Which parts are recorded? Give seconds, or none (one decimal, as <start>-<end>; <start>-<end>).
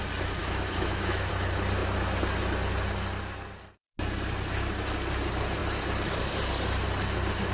0.0-0.4; 1.3-7.5